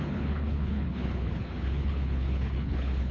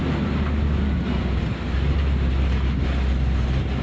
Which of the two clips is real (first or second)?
second